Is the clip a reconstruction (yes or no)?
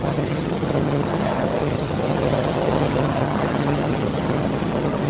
yes